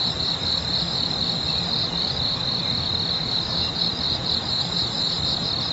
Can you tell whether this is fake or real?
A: real